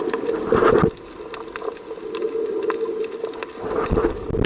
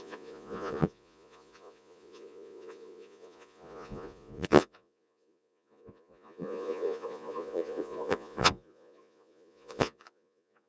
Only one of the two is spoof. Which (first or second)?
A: second